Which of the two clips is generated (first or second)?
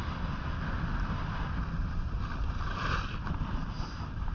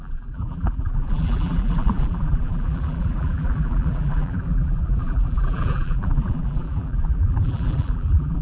second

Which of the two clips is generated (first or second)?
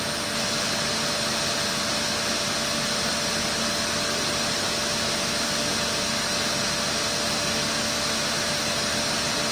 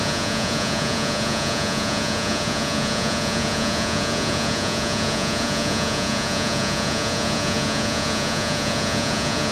second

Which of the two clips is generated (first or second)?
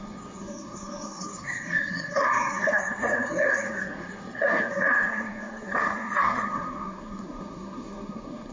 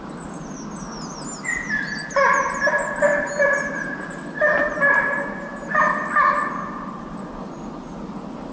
first